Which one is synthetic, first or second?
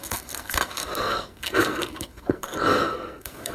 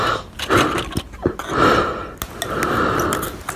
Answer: first